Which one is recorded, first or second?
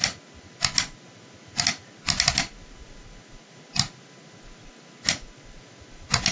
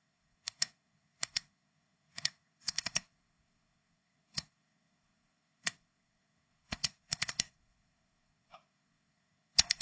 first